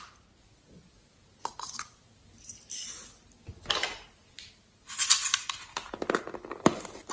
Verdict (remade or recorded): recorded